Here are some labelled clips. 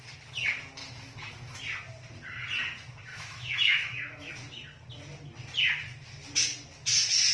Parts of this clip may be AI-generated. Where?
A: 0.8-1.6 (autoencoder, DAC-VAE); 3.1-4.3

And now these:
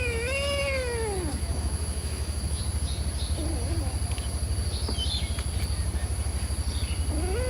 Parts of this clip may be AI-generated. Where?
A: 1.3-2.6 (autoencoder, DAC-VAE)